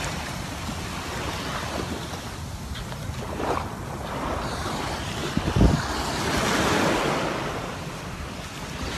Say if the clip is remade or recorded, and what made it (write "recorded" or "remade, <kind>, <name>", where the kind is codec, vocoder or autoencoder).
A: recorded